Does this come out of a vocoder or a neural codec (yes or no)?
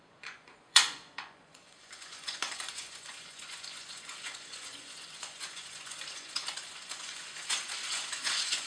yes